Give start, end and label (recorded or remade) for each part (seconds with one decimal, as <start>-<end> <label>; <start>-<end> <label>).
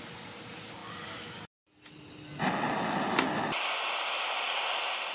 0.0-5.1 recorded